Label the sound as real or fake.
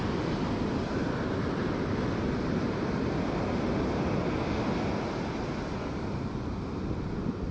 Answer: real